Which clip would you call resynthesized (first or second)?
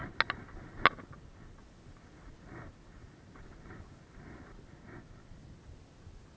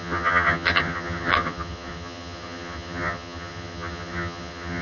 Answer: second